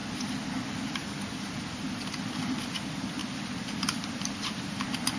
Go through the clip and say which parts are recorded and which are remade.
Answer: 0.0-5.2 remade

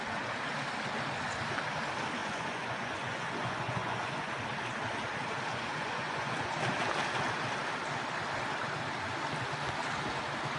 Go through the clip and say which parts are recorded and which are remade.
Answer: 0.0-2.2 recorded; 2.2-4.3 remade; 4.3-5.5 recorded; 5.5-6.5 remade; 6.5-10.6 recorded

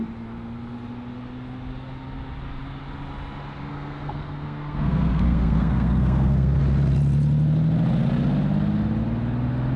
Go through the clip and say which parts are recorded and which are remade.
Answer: 0.0-3.7 recorded; 3.7-6.6 remade; 6.6-9.8 recorded

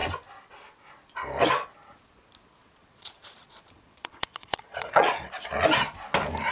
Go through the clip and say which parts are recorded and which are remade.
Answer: 0.0-2.6 recorded; 2.6-5.3 remade; 5.3-6.5 recorded

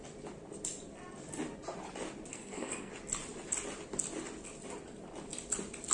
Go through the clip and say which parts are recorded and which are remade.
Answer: 0.0-2.3 recorded; 2.3-2.9 remade; 2.9-5.9 recorded